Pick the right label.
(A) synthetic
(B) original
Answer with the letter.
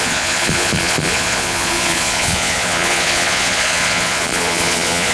A